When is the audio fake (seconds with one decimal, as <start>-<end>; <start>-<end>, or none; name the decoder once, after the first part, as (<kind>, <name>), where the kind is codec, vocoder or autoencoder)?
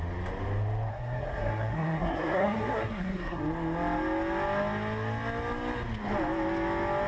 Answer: 0.9-3.4 (codec, SNAC)